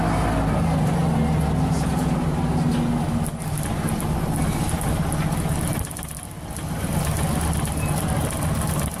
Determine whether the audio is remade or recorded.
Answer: recorded